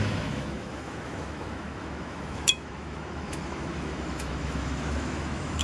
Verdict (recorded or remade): remade